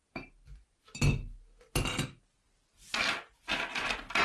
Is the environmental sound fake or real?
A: real